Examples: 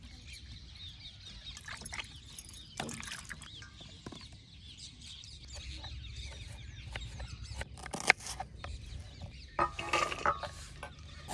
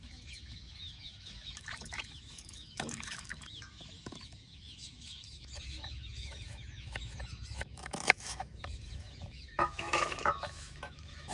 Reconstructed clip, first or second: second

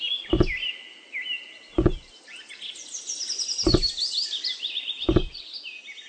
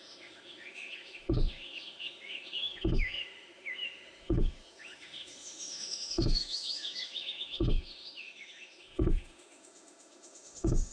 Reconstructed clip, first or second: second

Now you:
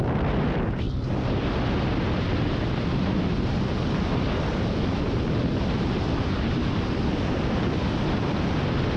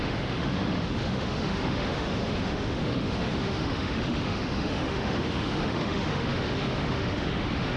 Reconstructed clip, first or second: second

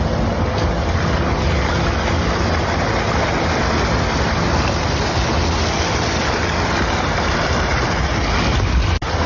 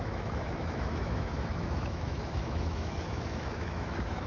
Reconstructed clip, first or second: second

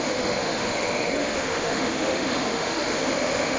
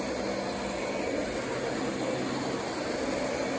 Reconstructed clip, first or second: first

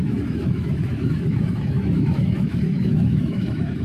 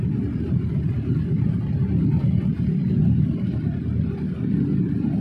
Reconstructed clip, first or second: first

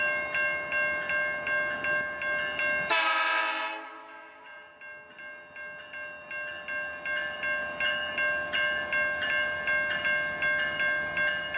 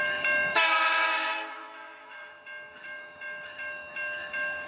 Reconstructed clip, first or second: second